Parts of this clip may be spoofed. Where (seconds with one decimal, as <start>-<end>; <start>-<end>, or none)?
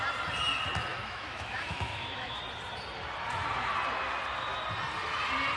0.9-2.4